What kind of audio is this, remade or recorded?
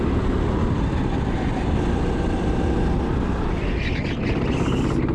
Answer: recorded